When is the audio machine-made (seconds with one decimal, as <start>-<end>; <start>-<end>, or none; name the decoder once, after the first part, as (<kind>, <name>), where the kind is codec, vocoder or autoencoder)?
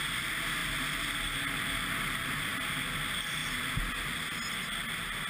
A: none